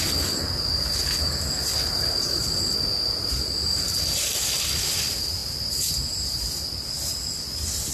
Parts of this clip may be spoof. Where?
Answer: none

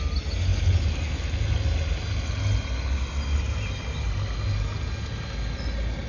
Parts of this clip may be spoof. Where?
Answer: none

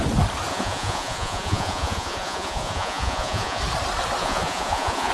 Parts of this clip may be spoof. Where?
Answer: 0.5-3.6 (vocoder, Vocos); 4.2-5.1

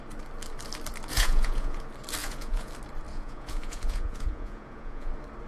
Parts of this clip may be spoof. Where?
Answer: 1.1-1.8 (vocoder, Vocos); 2.2-2.7; 3.1-5.1

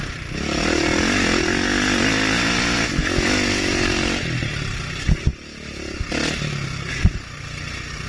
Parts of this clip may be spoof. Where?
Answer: none

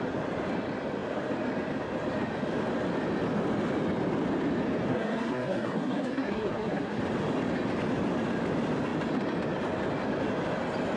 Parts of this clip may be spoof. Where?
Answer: 4.9-7.0 (codec, SNAC)